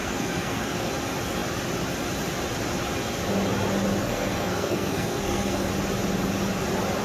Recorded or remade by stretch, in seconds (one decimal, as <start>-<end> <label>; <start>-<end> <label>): 0.0-0.9 remade; 0.9-4.0 recorded; 4.0-5.7 remade; 5.7-7.0 recorded